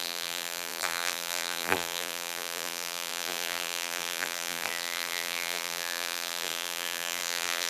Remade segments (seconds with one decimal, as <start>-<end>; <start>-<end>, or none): 0.0-7.7